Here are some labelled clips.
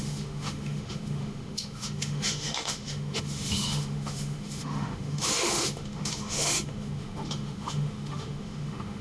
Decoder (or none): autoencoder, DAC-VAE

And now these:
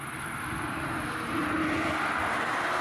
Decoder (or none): none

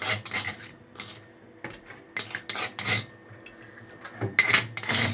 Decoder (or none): none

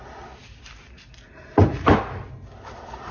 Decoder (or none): none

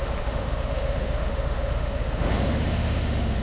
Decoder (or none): autoencoder, DAC-VAE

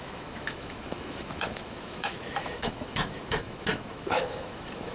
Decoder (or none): autoencoder, DAC-VAE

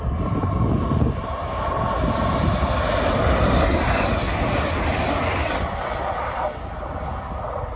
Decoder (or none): none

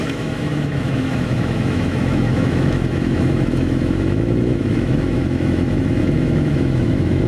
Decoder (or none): autoencoder, DAC-VAE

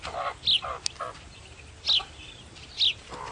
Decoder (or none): none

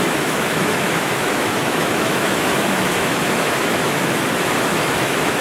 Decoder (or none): autoencoder, DAC-VAE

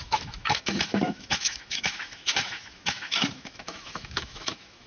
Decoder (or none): autoencoder, DAC-VAE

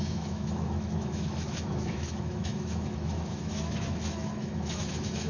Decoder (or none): autoencoder, DAC-VAE